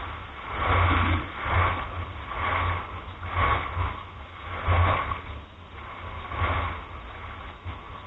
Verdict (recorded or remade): recorded